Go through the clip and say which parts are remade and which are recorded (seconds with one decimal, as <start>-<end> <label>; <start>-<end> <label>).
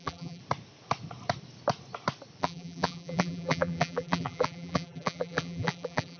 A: 0.0-0.4 remade; 0.4-2.4 recorded; 2.4-6.2 remade